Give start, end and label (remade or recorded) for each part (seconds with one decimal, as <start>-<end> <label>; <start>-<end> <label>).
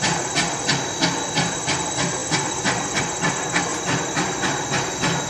0.0-2.2 recorded; 2.2-3.0 remade; 3.0-5.3 recorded